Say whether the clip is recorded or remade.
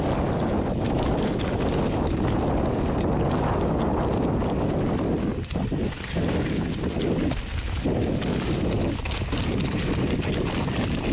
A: recorded